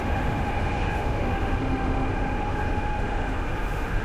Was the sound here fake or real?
fake